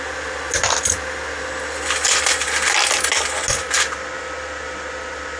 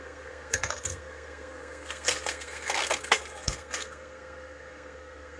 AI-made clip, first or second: second